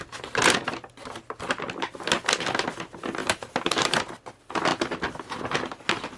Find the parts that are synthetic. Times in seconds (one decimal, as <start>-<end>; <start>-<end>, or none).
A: 3.2-3.9